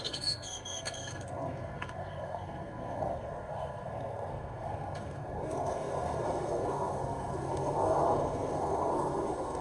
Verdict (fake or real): fake